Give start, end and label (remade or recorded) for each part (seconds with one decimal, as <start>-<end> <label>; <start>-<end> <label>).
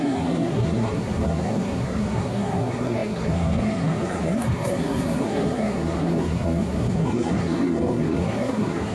0.0-8.9 remade